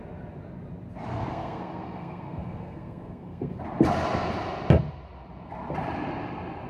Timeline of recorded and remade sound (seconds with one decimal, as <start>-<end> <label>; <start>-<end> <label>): 0.0-1.3 recorded; 1.3-3.6 remade; 3.6-6.7 recorded

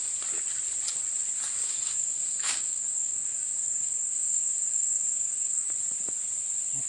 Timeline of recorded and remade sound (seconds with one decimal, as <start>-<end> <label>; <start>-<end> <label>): 0.0-1.6 recorded; 1.6-5.7 remade; 5.7-6.9 recorded

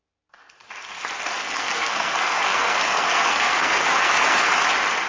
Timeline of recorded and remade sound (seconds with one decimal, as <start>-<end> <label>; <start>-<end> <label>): 0.0-1.4 recorded; 1.4-4.5 remade; 4.5-5.1 recorded

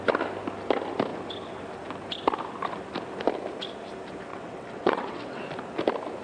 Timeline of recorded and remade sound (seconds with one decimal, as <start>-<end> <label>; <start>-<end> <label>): 0.0-4.3 recorded; 4.3-5.4 remade; 5.4-6.2 recorded